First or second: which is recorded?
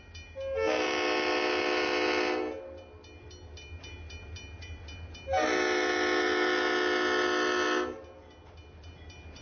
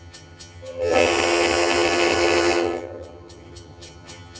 first